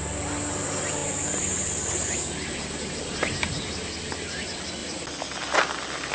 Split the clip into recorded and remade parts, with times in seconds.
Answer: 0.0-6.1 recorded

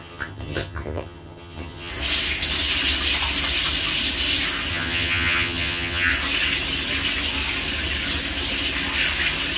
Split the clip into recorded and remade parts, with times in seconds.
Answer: 0.0-1.9 remade; 1.9-4.7 recorded; 4.7-6.1 remade; 6.1-9.6 recorded